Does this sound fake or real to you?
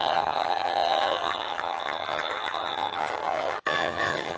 fake